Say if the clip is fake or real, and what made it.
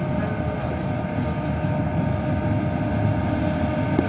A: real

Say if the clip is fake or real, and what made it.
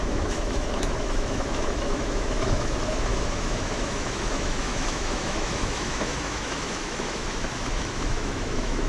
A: fake, autoencoder, DAC-VAE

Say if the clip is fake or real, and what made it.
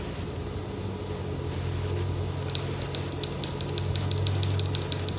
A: real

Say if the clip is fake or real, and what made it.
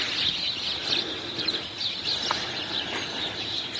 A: real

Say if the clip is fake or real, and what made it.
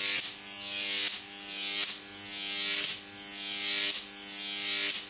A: real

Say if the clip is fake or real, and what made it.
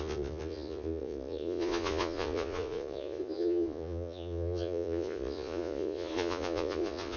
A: fake, vocoder, Vocos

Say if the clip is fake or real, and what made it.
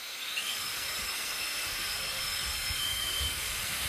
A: fake, codec, SNAC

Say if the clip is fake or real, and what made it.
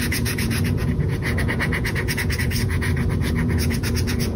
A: fake, vocoder, Vocos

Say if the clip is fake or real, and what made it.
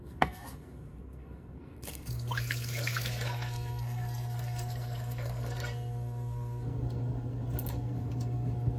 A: fake, codec, SNAC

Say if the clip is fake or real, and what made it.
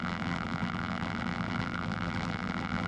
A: fake, vocoder, BigVGAN v2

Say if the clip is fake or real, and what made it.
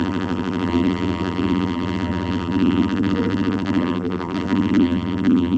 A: fake, vocoder, BigVGAN v2